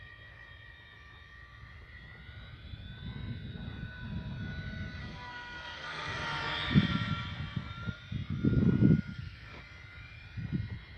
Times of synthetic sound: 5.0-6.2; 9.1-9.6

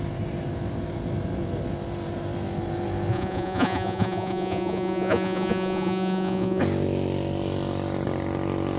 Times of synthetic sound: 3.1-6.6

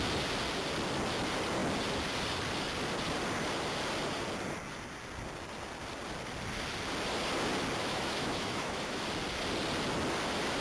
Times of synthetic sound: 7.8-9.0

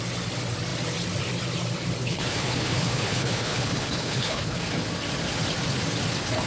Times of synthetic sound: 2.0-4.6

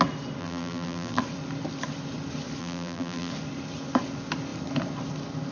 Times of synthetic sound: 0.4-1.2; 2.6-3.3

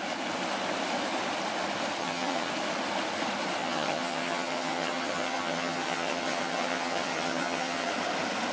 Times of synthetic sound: 2.0-2.5; 3.6-7.9

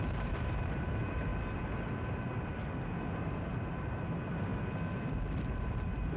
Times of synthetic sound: 0.0-1.3; 3.2-4.5; 5.1-6.2

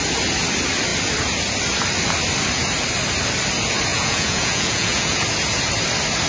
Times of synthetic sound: 3.9-5.2